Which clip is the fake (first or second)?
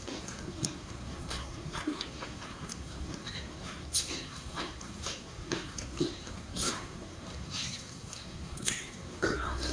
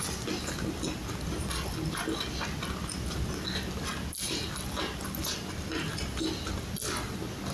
first